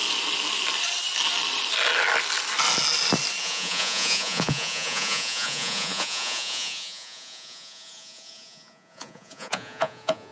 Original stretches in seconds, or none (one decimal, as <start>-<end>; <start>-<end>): 0.0-3.4